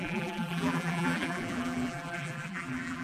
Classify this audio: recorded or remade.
remade